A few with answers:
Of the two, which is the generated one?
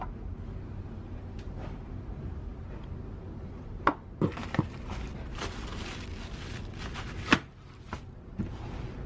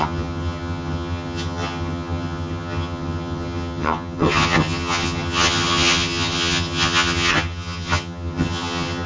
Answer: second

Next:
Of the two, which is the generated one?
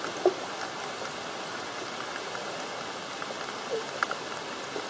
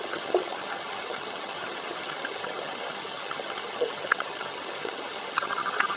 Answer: second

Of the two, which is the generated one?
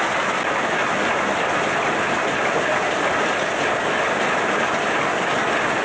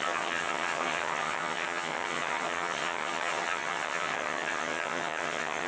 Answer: second